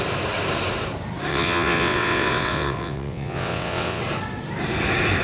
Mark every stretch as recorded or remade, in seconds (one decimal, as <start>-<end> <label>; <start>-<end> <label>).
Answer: 0.0-1.3 recorded; 1.3-4.0 remade; 4.0-5.2 recorded